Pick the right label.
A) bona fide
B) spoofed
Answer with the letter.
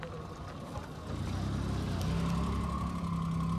A